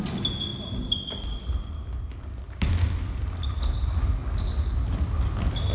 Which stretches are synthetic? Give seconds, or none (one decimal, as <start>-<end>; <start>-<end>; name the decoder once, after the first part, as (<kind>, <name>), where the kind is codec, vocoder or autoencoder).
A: none